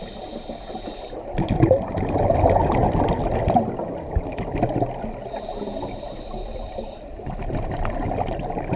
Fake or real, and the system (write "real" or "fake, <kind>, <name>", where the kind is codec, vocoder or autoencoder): real